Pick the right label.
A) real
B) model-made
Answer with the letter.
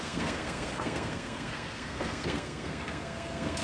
B